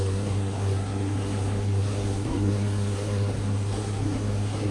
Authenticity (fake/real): fake